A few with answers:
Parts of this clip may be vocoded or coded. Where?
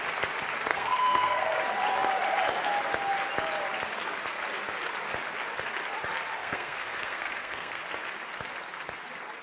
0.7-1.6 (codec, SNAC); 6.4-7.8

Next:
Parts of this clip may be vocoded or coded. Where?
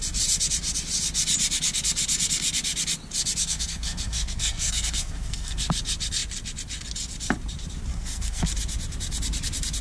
3.4-5.6 (codec, SNAC); 7.9-8.5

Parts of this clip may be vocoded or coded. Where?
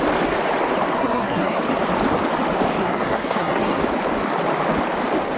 0.9-1.6 (codec, SNAC); 2.8-3.8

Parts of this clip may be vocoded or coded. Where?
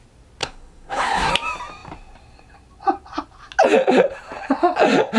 0.4-1.3 (codec, SNAC)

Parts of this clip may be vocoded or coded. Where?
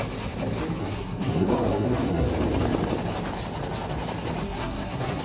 0.8-2.3 (codec, SNAC); 4.4-5.2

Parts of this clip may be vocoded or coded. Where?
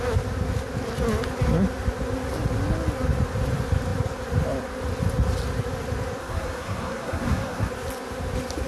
6.2-7.7 (codec, SNAC)